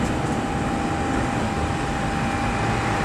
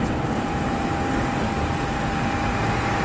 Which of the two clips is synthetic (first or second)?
second